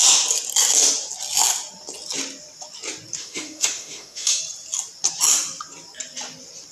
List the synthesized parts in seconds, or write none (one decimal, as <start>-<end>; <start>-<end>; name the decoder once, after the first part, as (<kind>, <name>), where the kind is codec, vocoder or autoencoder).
3.2-4.4 (autoencoder, DAC-VAE)